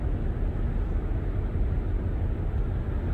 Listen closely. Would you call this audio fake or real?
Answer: real